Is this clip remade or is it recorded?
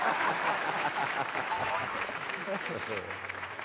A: remade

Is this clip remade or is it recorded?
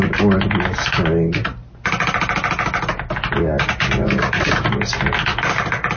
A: recorded